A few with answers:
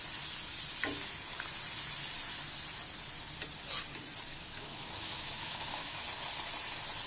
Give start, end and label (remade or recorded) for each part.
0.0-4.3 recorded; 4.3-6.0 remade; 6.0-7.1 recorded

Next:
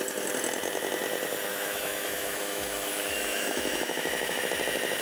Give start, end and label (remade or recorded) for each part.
0.0-1.5 recorded; 1.5-4.4 remade; 4.4-5.0 recorded

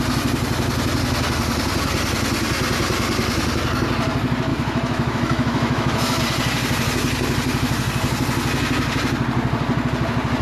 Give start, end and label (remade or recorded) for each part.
0.0-4.5 recorded; 4.5-6.2 remade; 6.2-10.4 recorded

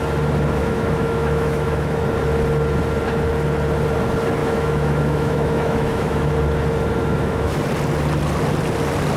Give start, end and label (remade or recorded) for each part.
0.0-0.6 recorded; 0.6-2.0 remade; 2.0-4.4 recorded; 4.4-6.3 remade; 6.3-7.0 recorded; 7.0-7.6 remade; 7.6-9.2 recorded

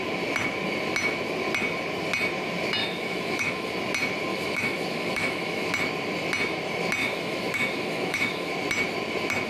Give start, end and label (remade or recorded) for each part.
0.0-2.8 recorded; 2.8-3.7 remade; 3.7-4.3 recorded; 4.3-5.7 remade; 5.7-7.0 recorded; 7.0-8.5 remade; 8.5-9.5 recorded

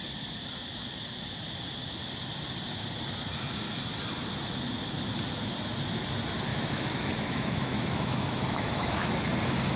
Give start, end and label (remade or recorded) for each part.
0.0-6.5 recorded; 6.5-9.3 remade; 9.3-9.8 recorded

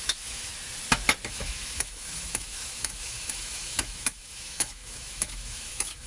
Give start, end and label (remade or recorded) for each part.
0.0-0.5 remade; 0.5-1.3 recorded; 1.3-6.1 remade

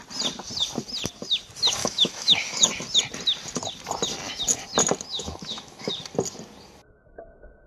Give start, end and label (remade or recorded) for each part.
0.0-1.8 recorded; 1.8-2.7 remade; 2.7-5.1 recorded; 5.1-5.9 remade; 5.9-7.7 recorded